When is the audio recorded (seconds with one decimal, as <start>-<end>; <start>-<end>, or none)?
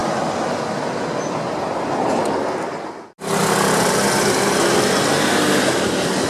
0.0-6.3